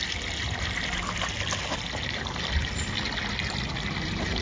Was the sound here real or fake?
real